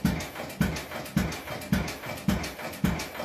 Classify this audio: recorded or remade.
recorded